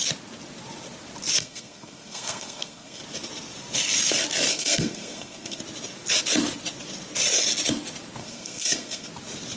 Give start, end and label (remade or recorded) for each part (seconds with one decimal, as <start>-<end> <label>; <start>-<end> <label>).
0.0-1.4 recorded; 1.4-3.0 remade; 3.0-4.5 recorded; 4.5-5.6 remade; 5.6-8.2 recorded; 8.2-9.1 remade; 9.1-9.6 recorded